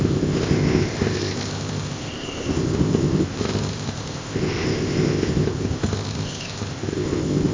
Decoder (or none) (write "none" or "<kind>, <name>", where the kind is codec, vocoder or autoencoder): codec, ZipCodec